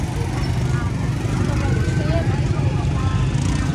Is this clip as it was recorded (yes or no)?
yes